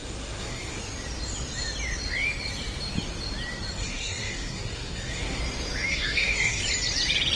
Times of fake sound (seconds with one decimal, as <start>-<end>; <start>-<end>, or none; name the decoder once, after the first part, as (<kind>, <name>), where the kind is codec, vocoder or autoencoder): 0.0-0.8 (codec, SNAC); 3.8-5.4; 5.9-6.6